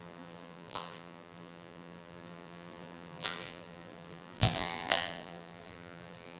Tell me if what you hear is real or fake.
fake